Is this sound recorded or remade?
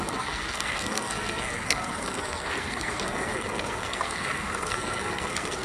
remade